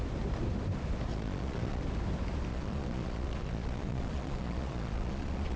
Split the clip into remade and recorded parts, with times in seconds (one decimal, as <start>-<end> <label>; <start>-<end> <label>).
0.0-1.1 recorded; 1.1-1.8 remade; 1.8-2.5 recorded; 2.5-5.6 remade